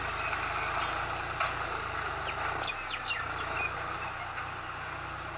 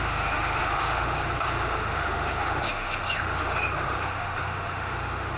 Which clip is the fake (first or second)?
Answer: second